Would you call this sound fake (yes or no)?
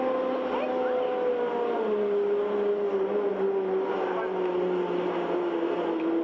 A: no